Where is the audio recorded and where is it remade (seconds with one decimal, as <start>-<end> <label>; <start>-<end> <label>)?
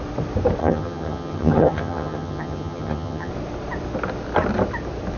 0.0-0.6 recorded; 0.6-3.3 remade; 3.3-5.2 recorded